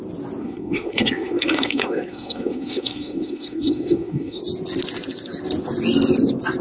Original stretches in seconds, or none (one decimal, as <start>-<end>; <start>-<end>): 0.0-0.4; 4.4-6.6

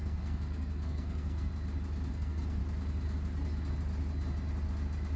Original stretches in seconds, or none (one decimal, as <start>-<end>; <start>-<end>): 1.5-2.1; 2.6-5.2